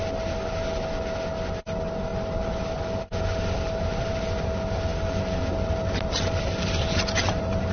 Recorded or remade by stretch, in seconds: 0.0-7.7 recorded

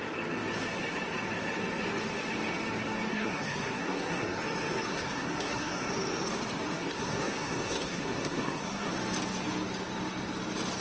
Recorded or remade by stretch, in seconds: 0.0-3.1 recorded; 3.1-4.4 remade; 4.4-4.9 recorded; 4.9-5.9 remade; 5.9-6.7 recorded; 6.7-8.9 remade; 8.9-10.8 recorded

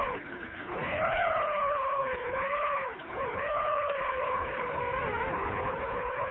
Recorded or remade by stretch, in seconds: 0.0-4.8 remade; 4.8-5.3 recorded; 5.3-6.3 remade

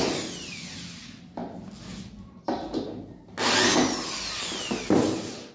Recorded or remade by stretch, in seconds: 0.0-5.5 recorded

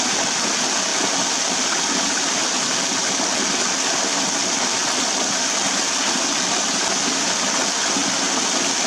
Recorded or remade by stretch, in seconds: 0.0-8.9 recorded